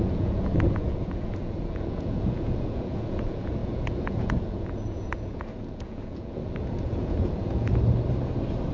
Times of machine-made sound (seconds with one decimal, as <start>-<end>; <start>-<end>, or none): 0.0-7.7